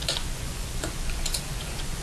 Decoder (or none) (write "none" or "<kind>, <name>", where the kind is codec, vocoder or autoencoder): vocoder, Vocos